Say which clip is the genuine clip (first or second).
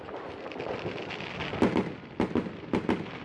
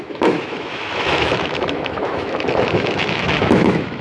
first